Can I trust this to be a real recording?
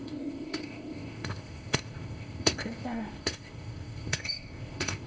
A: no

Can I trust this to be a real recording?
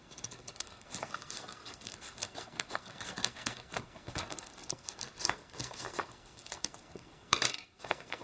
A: no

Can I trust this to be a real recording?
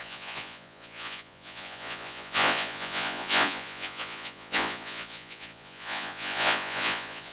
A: no